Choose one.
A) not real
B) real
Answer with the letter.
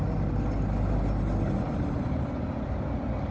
B